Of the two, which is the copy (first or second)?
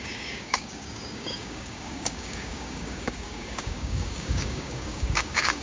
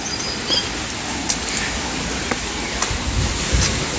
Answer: first